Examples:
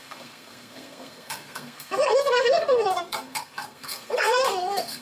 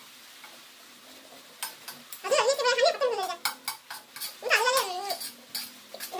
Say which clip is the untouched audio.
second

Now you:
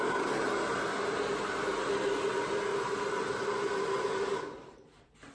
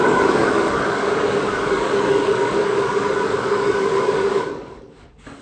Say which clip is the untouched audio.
first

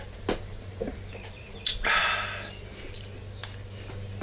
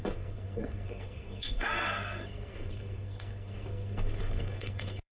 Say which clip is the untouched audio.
first